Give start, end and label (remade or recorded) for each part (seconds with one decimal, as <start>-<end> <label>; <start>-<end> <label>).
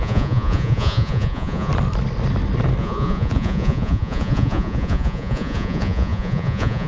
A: 0.0-1.7 remade; 1.7-2.8 recorded; 2.8-6.9 remade